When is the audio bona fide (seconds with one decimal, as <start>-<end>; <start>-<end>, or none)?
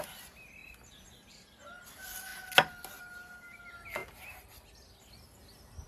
0.0-5.9